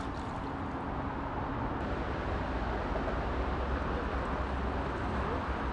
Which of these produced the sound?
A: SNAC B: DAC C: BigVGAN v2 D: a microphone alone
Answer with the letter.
D